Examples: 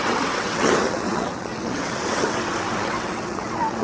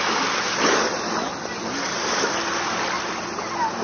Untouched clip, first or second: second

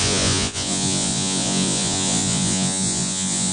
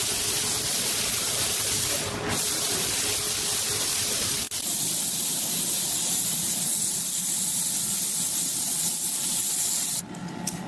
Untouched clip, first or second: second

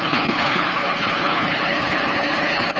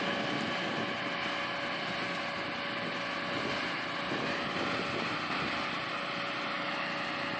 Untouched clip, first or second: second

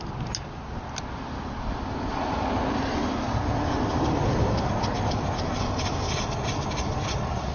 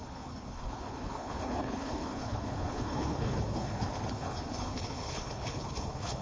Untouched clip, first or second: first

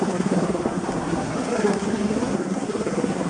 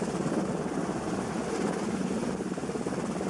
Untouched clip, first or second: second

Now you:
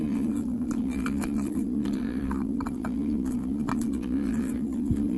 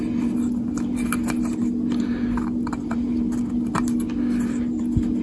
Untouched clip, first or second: second